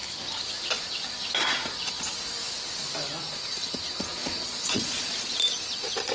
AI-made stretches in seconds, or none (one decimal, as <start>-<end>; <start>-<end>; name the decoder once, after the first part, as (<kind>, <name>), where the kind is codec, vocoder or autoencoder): 4.2-5.4 (vocoder, Vocos)